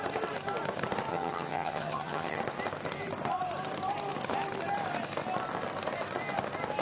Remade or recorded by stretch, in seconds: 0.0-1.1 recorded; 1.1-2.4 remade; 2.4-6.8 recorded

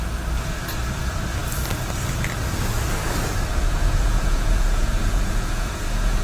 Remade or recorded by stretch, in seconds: 0.0-3.8 recorded; 3.8-6.2 remade

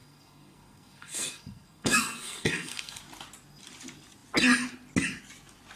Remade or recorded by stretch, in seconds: 0.0-3.0 remade; 3.0-5.8 recorded

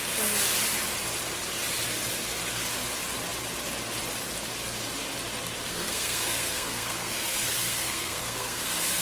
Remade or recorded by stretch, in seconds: 0.0-5.7 recorded; 5.7-9.0 remade